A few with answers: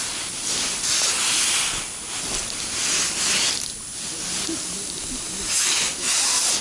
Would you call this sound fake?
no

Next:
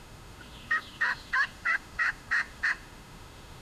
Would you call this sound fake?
yes